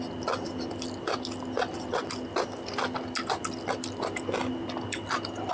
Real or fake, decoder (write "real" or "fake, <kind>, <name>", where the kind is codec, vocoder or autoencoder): real